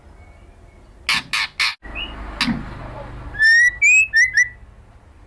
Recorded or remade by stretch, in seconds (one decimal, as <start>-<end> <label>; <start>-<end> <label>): 0.0-5.3 recorded